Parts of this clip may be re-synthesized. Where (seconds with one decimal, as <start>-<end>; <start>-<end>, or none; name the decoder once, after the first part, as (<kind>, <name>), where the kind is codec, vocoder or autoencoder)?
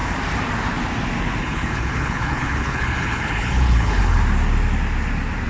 1.4-4.2 (codec, HILCodec)